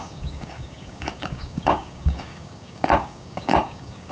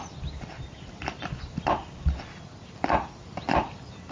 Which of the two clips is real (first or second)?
second